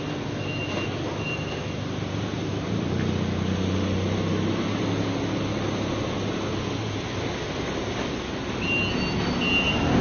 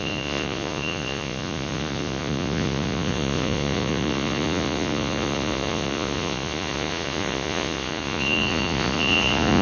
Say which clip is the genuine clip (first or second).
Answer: first